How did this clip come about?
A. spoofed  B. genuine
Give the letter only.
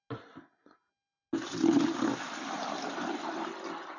B